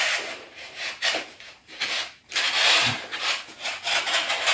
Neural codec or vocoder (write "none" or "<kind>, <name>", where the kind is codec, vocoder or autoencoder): vocoder, BigVGAN v2